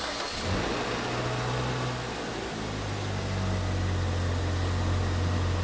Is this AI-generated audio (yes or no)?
no